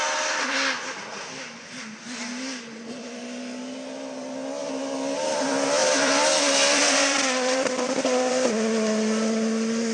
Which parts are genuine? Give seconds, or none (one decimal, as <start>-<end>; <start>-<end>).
0.0-5.8; 8.5-9.9